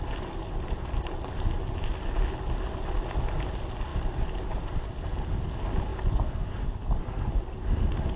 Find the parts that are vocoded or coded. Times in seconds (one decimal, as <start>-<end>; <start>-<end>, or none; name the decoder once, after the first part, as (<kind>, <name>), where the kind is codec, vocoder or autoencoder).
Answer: 3.9-4.9 (vocoder, BigVGAN v2)